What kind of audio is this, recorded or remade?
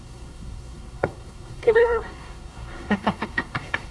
remade